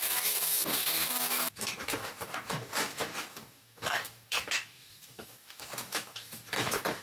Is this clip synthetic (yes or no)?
yes